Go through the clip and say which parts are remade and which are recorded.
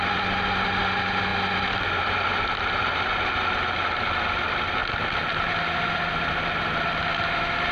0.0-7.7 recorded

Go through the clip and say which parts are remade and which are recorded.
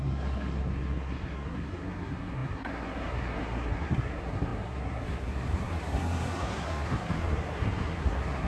0.0-8.5 remade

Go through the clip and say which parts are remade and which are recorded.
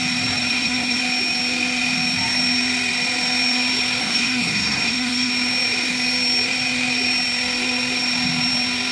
0.0-0.5 recorded; 0.5-1.0 remade; 1.0-4.0 recorded; 4.0-5.3 remade; 5.3-8.9 recorded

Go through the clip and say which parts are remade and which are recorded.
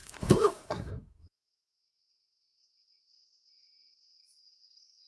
0.0-5.1 remade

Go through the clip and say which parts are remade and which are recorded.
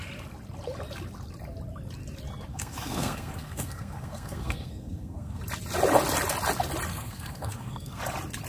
0.0-2.5 recorded; 2.5-5.4 remade; 5.4-6.9 recorded; 6.9-8.0 remade; 8.0-8.5 recorded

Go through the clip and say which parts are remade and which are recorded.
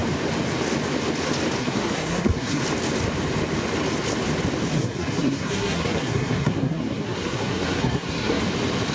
0.0-1.6 recorded; 1.6-2.6 remade; 2.6-4.7 recorded; 4.7-8.4 remade; 8.4-8.9 recorded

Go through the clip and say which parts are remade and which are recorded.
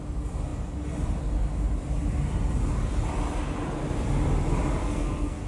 0.0-4.8 recorded; 4.8-5.5 remade